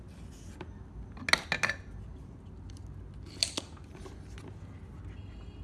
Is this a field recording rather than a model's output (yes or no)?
yes